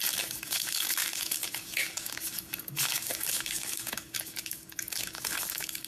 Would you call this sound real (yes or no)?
no